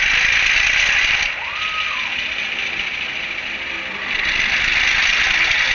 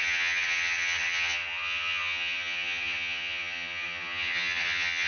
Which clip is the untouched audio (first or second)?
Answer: first